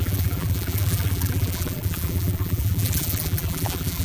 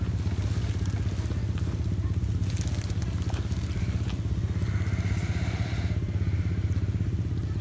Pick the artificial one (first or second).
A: first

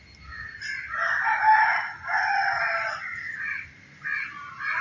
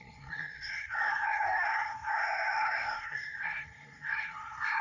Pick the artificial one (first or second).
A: second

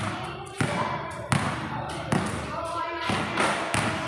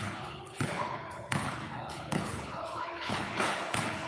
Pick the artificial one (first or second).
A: second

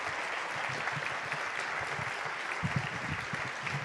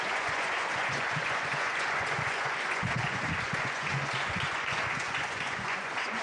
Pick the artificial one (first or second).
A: second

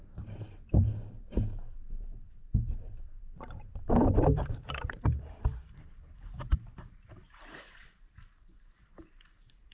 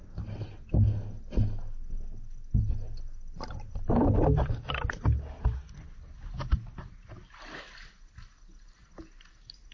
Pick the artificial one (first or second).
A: first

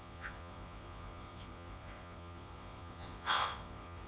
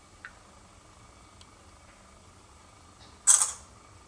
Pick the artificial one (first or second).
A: first